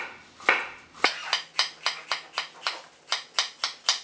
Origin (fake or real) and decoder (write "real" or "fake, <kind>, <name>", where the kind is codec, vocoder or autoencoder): real